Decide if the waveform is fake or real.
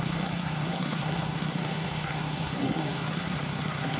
fake